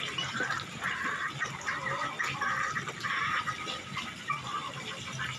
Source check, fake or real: real